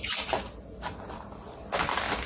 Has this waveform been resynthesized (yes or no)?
no